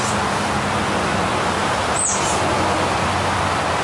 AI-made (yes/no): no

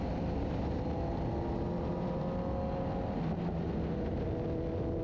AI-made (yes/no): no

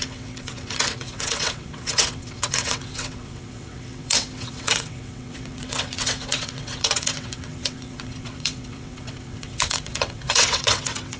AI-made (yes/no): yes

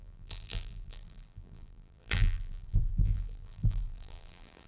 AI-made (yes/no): yes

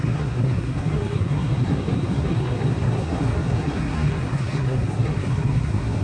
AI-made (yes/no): yes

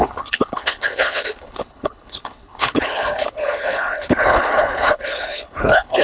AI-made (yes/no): yes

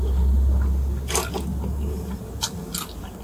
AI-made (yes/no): no